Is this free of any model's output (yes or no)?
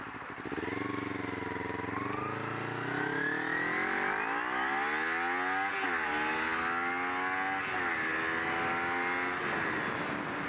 yes